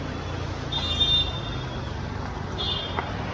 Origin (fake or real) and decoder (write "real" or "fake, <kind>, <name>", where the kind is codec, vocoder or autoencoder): real